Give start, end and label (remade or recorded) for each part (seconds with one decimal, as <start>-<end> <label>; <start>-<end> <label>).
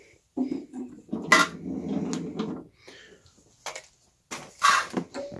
0.0-1.3 remade; 1.3-4.5 recorded; 4.5-5.4 remade